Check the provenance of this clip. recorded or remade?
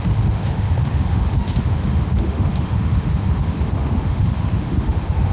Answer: remade